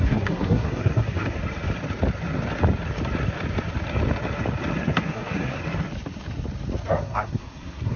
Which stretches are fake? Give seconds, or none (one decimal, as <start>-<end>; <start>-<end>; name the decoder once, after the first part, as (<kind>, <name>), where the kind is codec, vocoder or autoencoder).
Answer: 0.0-1.4 (codec, SNAC); 4.8-5.6; 6.9-8.0